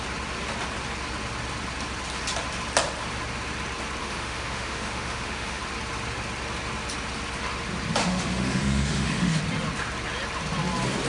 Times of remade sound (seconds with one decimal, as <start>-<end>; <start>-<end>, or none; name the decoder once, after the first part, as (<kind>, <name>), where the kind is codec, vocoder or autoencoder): 4.0-5.6 (autoencoder, DAC-VAE); 8.0-9.4